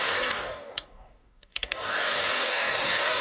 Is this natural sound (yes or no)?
no